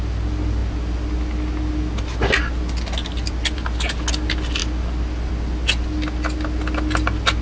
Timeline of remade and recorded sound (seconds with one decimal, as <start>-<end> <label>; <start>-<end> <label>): 0.0-7.4 recorded